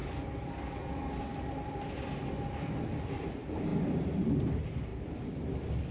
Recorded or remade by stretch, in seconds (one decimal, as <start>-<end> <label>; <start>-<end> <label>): 0.0-1.0 remade; 1.0-5.9 recorded

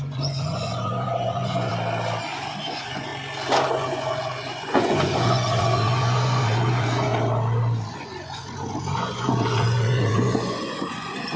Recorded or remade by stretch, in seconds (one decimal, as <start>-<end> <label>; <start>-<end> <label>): 0.0-1.7 remade; 1.7-2.6 recorded; 2.6-3.1 remade; 3.1-3.7 recorded; 3.7-7.1 remade; 7.1-7.9 recorded; 7.9-11.4 remade

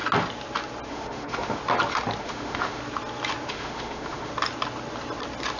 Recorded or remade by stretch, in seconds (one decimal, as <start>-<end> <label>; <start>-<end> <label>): 0.0-0.9 recorded; 0.9-1.6 remade; 1.6-2.2 recorded; 2.2-2.8 remade; 2.8-3.5 recorded; 3.5-4.3 remade; 4.3-5.6 recorded

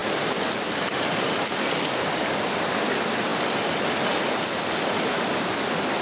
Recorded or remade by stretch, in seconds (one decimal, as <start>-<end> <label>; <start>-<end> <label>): 0.0-6.0 recorded